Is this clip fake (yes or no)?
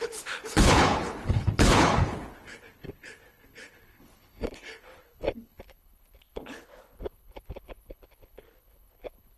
yes